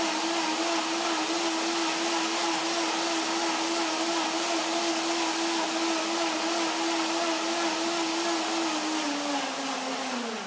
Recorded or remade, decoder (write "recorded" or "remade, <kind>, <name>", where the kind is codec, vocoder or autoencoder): recorded